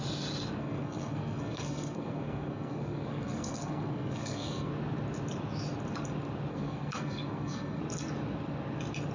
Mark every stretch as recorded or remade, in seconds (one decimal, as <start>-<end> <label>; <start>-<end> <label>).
0.0-0.6 recorded; 0.6-4.7 remade; 4.7-6.5 recorded; 6.5-7.8 remade; 7.8-9.1 recorded